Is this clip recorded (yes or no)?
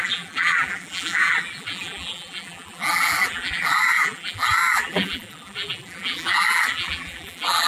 no